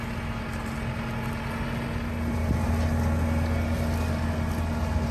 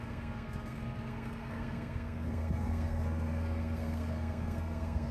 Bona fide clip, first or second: first